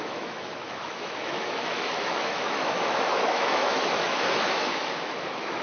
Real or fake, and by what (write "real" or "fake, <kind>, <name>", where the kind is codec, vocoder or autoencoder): fake, autoencoder, DAC-VAE